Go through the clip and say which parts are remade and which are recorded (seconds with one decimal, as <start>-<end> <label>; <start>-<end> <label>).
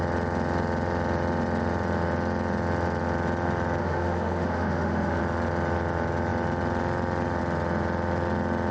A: 0.0-3.8 recorded; 3.8-5.2 remade; 5.2-8.7 recorded